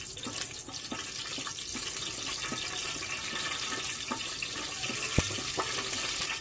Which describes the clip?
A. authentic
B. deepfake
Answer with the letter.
A